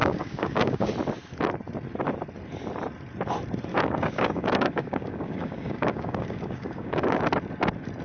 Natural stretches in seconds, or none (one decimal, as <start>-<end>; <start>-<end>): 0.9-3.7; 7.2-8.0